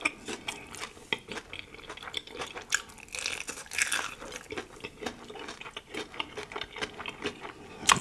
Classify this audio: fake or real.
real